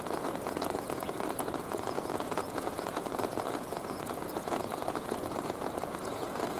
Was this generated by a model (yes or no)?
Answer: yes